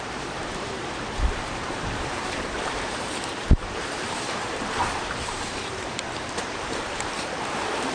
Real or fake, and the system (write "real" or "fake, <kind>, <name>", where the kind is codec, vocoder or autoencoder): fake, vocoder, BigVGAN v2